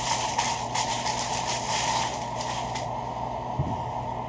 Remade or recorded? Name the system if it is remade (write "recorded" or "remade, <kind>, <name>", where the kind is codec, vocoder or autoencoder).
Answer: remade, vocoder, BigVGAN v2